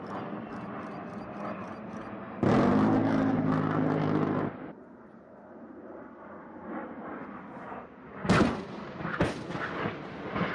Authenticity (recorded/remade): recorded